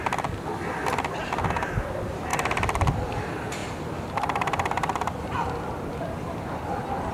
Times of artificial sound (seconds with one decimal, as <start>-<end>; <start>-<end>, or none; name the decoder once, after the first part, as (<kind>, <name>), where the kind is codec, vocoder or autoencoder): none